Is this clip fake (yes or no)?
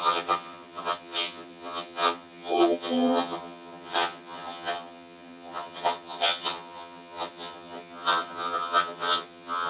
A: yes